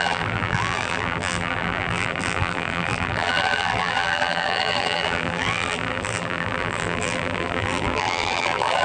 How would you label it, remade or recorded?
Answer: remade